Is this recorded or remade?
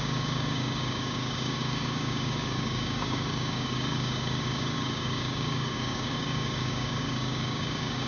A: remade